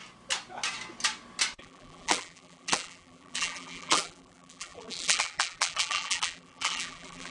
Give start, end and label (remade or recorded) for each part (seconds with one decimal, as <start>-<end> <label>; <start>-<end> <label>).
0.0-1.6 recorded; 1.6-7.3 remade